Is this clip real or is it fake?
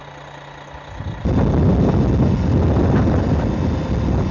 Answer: real